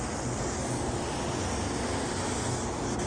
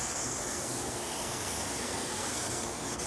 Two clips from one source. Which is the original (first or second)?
first